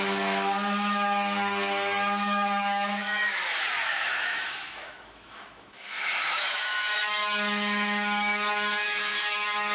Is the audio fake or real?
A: fake